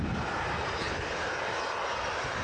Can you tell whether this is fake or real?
fake